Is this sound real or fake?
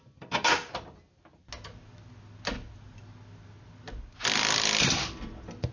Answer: real